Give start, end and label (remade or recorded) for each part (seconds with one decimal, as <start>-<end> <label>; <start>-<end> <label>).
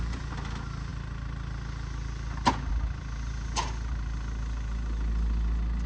0.0-5.9 recorded